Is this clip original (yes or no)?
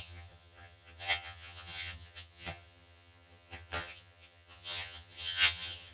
no